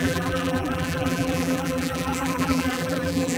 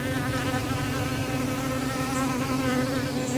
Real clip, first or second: second